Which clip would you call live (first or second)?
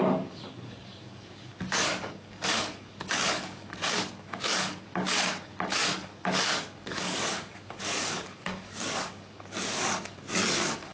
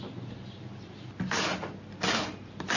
second